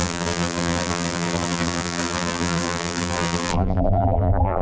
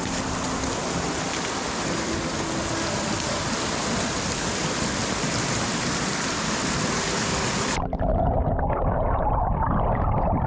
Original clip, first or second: second